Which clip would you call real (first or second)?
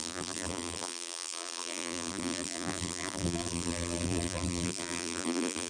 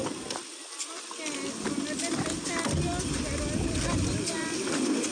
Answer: second